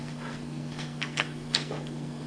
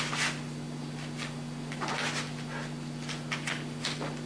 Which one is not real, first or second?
first